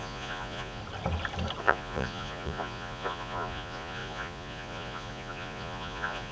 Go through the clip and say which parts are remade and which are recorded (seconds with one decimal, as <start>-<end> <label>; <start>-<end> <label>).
0.0-0.8 remade; 0.8-1.6 recorded; 1.6-6.3 remade